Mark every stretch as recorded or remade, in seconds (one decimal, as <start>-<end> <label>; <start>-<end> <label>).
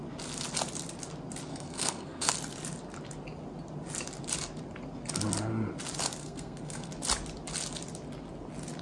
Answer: 0.0-1.5 recorded; 1.5-2.3 remade; 2.3-6.2 recorded; 6.2-6.9 remade; 6.9-8.8 recorded